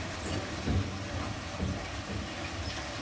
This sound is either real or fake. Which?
real